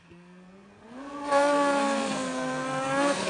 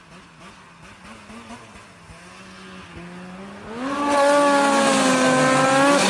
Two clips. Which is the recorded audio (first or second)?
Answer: second